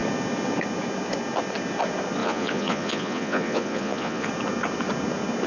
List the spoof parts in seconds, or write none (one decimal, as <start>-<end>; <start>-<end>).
2.2-4.3